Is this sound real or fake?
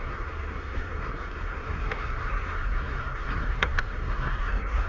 fake